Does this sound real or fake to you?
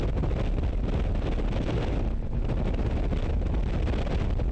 real